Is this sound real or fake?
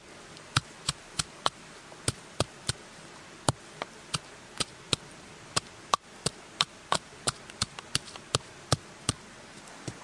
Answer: real